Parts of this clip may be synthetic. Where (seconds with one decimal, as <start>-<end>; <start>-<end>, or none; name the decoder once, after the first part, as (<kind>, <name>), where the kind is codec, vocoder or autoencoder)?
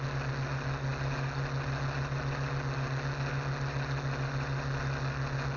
none